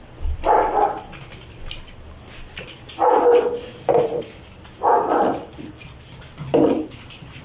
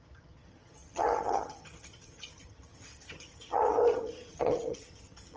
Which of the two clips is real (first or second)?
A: first